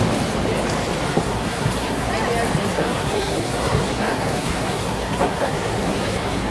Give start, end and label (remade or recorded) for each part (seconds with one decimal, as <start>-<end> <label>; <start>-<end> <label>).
0.0-1.1 recorded; 1.1-2.1 remade; 2.1-2.6 recorded; 2.6-6.5 remade

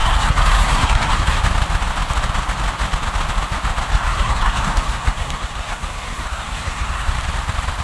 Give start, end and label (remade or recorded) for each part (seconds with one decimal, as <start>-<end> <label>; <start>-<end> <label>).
0.0-1.4 remade; 1.4-3.9 recorded; 3.9-7.1 remade; 7.1-7.8 recorded

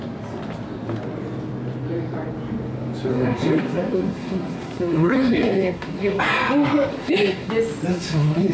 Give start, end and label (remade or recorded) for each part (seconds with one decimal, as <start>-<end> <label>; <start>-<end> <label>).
0.0-3.1 recorded; 3.1-6.2 remade; 6.2-6.9 recorded; 6.9-7.5 remade; 7.5-7.9 recorded; 7.9-8.5 remade

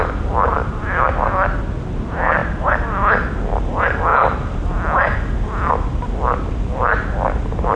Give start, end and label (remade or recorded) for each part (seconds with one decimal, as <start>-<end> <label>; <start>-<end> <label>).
0.0-7.8 recorded

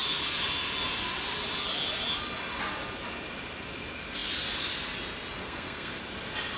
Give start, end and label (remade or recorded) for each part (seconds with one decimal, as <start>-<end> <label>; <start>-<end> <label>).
0.0-5.4 recorded; 5.4-6.0 remade; 6.0-6.6 recorded